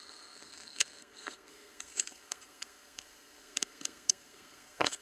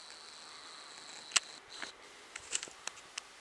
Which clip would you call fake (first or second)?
first